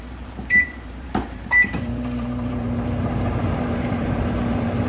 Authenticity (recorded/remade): remade